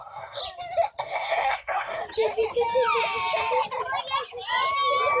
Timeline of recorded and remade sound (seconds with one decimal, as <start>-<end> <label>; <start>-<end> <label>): 0.0-0.4 remade; 0.4-1.0 recorded; 1.0-2.0 remade; 2.0-5.2 recorded